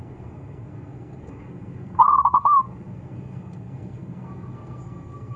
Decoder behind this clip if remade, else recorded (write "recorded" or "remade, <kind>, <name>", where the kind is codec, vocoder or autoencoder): remade, codec, SNAC